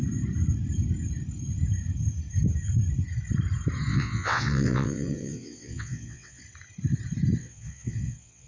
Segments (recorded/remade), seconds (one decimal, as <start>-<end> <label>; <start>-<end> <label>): 0.0-3.9 recorded; 3.9-6.4 remade; 6.4-7.4 recorded; 7.4-8.5 remade